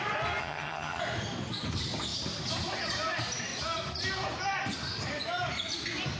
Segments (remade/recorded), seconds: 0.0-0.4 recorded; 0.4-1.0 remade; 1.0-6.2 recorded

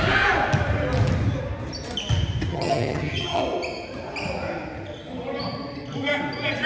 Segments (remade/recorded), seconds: 0.0-2.5 recorded; 2.5-3.4 remade; 3.4-6.7 recorded

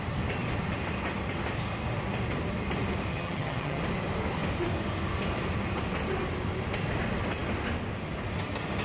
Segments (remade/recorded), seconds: 0.0-3.1 recorded; 3.1-3.8 remade; 3.8-8.8 recorded

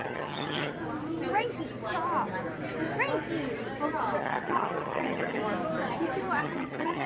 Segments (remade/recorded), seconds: 0.0-0.8 remade; 0.8-4.2 recorded; 4.2-5.4 remade; 5.4-6.4 recorded; 6.4-7.1 remade

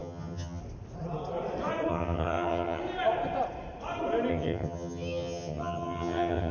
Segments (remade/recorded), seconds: 0.0-0.6 remade; 0.6-1.9 recorded; 1.9-2.8 remade; 2.8-4.3 recorded; 4.3-6.5 remade

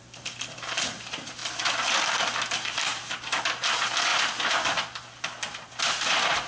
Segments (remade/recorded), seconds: 0.0-6.5 recorded

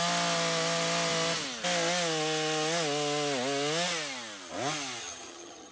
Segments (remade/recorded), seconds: 0.0-5.0 recorded; 5.0-5.7 remade

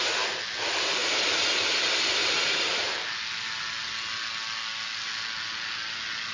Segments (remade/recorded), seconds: 0.0-6.3 recorded